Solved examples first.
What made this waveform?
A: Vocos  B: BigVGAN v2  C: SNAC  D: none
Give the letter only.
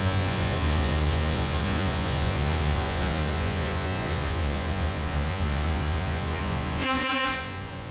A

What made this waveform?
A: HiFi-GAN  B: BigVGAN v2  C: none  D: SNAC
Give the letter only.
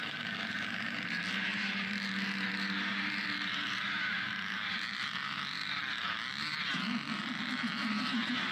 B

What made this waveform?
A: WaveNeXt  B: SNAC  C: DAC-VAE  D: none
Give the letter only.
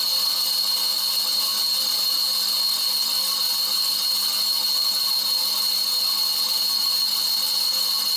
D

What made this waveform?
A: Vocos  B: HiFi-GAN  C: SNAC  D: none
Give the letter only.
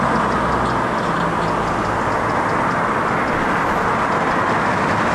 D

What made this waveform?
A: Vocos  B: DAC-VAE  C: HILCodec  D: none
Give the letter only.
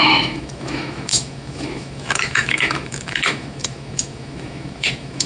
B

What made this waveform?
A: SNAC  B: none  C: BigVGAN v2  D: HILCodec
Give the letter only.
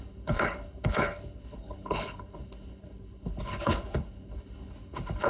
D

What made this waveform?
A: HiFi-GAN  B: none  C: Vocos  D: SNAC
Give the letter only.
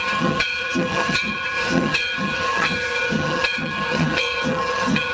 A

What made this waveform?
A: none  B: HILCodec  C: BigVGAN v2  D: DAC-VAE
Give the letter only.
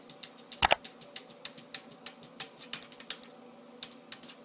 A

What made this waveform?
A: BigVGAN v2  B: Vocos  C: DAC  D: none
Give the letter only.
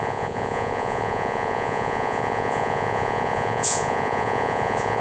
B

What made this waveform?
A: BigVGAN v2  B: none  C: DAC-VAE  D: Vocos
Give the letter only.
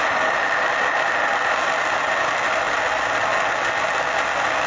B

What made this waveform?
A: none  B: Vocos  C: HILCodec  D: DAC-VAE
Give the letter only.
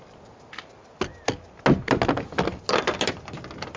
A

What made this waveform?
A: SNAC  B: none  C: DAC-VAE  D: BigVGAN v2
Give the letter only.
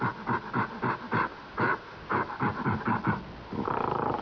B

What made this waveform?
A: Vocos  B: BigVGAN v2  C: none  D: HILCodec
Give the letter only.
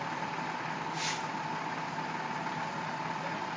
C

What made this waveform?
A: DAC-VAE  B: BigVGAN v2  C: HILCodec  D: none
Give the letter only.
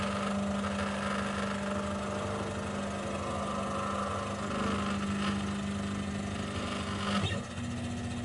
D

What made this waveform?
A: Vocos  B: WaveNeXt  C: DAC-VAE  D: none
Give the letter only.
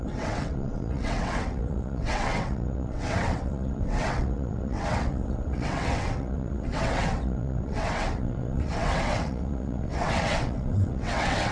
B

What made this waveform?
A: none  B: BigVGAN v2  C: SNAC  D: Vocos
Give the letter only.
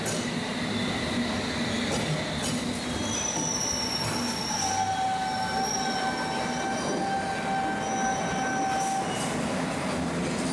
A